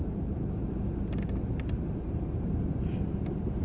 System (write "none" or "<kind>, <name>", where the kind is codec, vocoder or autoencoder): none